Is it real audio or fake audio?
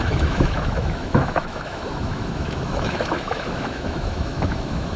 fake